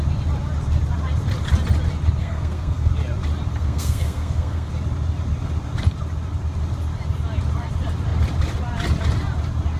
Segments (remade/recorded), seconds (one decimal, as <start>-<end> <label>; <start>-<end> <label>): 0.0-2.2 recorded; 2.2-2.9 remade; 2.9-3.5 recorded; 3.5-4.7 remade; 4.7-9.8 recorded